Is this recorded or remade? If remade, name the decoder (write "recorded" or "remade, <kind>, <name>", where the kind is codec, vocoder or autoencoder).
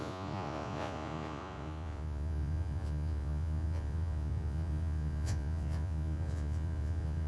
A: remade, vocoder, Vocos